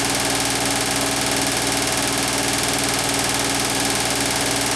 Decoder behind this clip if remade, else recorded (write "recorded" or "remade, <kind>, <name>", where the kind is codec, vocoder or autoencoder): recorded